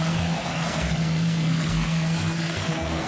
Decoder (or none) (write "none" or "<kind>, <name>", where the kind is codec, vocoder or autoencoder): codec, SNAC